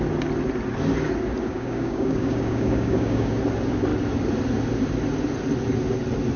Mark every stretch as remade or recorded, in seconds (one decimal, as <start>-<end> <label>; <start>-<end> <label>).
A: 0.0-1.4 recorded; 1.4-3.4 remade; 3.4-6.4 recorded